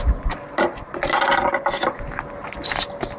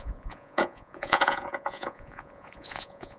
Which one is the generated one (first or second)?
second